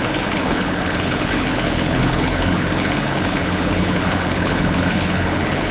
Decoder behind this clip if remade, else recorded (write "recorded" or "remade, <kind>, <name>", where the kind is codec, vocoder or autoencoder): remade, codec, HILCodec